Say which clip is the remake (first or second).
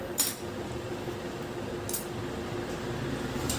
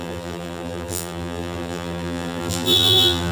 second